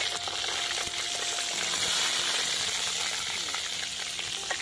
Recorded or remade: recorded